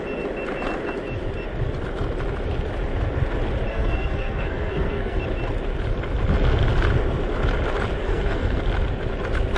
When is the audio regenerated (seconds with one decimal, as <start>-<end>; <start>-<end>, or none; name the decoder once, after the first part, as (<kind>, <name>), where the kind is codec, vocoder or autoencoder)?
3.7-5.2 (codec, SNAC); 8.0-8.6